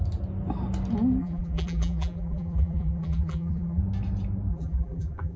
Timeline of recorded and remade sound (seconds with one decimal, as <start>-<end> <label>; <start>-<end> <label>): 0.0-1.2 recorded; 1.2-3.8 remade; 3.8-4.5 recorded; 4.5-5.4 remade